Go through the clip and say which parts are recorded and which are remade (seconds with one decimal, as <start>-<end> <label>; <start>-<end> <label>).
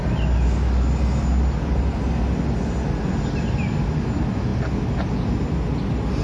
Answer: 0.0-6.2 recorded